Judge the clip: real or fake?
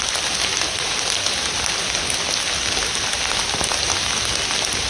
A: real